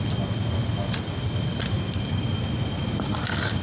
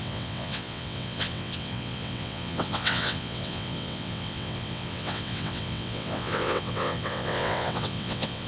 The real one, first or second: first